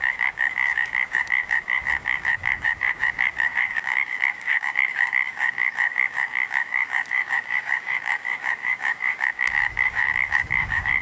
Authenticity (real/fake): fake